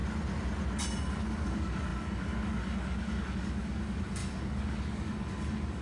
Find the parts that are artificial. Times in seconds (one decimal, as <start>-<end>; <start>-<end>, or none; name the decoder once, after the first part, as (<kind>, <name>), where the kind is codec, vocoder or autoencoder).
1.1-5.8 (codec, DAC)